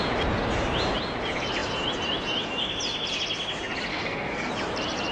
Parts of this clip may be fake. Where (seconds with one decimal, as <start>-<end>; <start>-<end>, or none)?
3.9-4.5